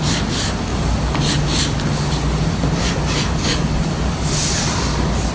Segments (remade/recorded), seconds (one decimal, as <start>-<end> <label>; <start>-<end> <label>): 0.0-5.3 recorded